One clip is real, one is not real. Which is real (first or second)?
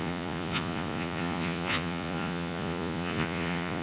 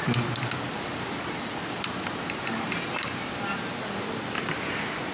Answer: second